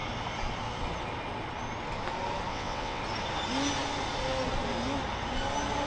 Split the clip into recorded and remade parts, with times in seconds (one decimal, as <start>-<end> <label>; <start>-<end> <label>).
0.0-2.5 recorded; 2.5-3.0 remade; 3.0-5.9 recorded